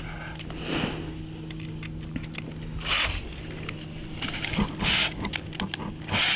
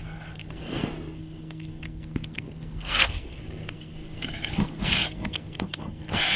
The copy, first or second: second